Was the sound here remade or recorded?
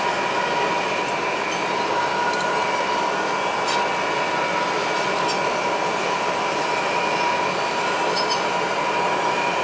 recorded